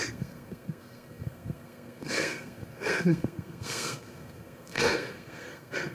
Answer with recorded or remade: remade